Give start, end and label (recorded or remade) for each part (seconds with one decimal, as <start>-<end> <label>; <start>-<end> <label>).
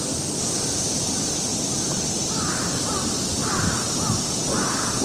0.0-5.0 recorded